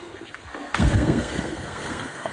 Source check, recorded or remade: remade